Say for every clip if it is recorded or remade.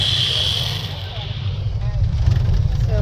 recorded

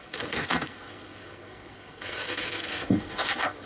remade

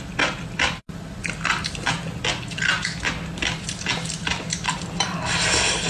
recorded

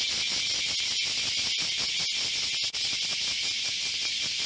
recorded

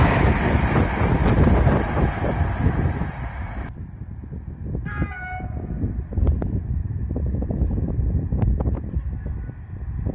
recorded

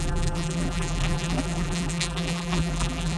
remade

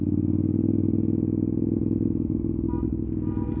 recorded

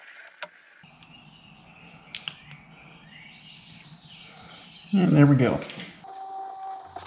recorded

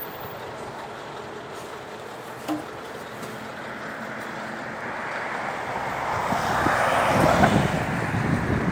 recorded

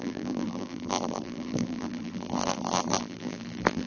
remade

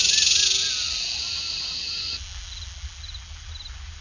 recorded